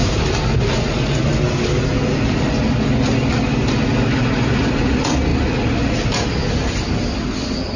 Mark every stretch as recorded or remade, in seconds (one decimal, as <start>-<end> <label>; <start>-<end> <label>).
0.0-7.8 recorded